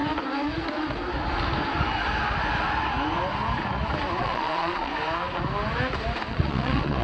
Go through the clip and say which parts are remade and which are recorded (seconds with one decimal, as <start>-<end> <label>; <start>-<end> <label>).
0.0-4.2 recorded; 4.2-4.9 remade; 4.9-6.3 recorded; 6.3-7.0 remade